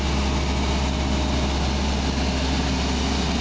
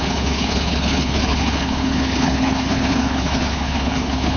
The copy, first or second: second